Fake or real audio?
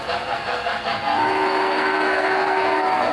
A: fake